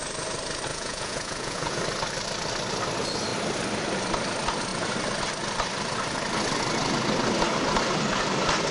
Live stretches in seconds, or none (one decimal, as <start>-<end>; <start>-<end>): 0.0-0.7; 1.8-8.7